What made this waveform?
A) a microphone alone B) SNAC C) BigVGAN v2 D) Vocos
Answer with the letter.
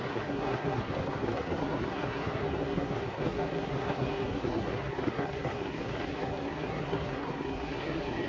B